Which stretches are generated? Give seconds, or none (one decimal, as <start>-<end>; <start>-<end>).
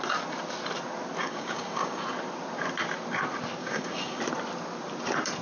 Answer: 1.2-2.0; 3.6-4.2